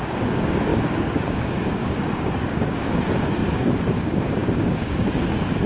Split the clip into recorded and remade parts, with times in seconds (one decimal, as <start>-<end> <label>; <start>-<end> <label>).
0.0-5.7 remade